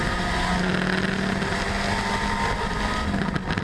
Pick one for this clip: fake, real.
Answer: real